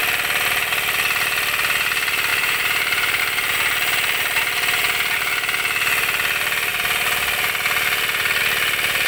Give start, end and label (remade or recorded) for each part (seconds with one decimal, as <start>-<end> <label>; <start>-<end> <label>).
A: 0.0-2.3 recorded; 2.3-3.2 remade; 3.2-9.1 recorded